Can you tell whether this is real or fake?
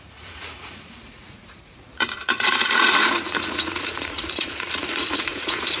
fake